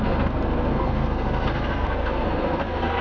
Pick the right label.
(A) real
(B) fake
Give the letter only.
B